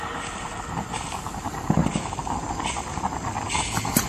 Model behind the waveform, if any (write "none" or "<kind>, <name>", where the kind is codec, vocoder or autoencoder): none